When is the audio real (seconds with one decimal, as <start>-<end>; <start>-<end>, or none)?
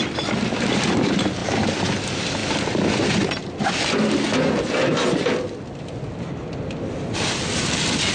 0.0-8.1